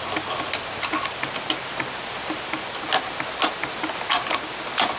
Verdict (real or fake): real